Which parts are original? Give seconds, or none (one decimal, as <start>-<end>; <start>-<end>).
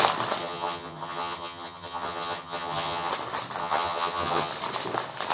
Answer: 0.0-0.4; 3.1-3.6; 4.5-5.3